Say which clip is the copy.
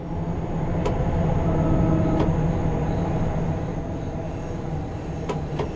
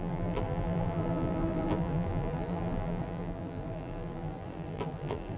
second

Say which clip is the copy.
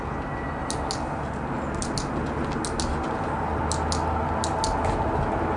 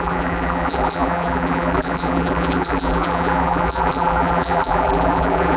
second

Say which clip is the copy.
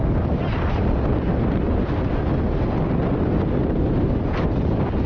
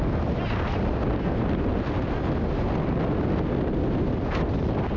first